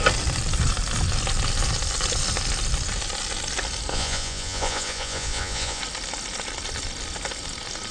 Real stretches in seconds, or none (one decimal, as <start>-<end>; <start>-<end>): 0.0-3.9; 5.8-7.9